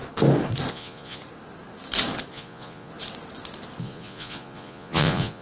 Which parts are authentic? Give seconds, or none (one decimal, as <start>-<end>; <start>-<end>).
0.0-0.7; 1.2-2.3; 2.9-3.8